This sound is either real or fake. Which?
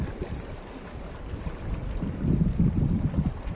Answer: fake